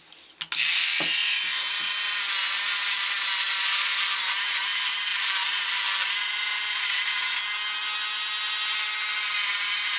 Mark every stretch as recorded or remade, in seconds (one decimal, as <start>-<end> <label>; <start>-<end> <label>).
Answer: 0.0-10.0 recorded